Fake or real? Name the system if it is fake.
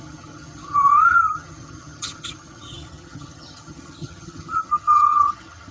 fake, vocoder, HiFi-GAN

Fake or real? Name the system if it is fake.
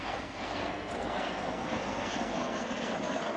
fake, codec, SNAC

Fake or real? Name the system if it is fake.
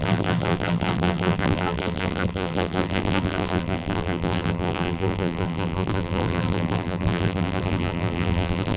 fake, vocoder, BigVGAN v2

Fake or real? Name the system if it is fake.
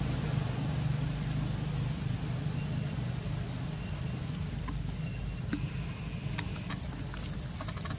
real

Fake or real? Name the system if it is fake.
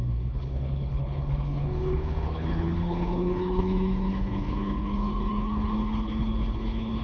fake, codec, HILCodec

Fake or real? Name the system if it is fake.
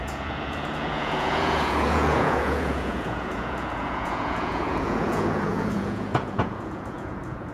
fake, vocoder, Vocos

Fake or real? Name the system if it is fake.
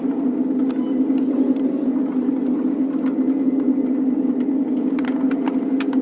real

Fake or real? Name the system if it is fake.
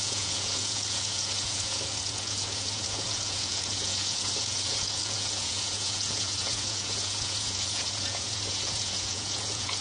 fake, vocoder, Vocos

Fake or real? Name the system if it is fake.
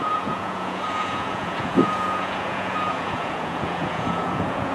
fake, vocoder, Vocos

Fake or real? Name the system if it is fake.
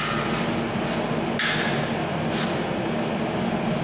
real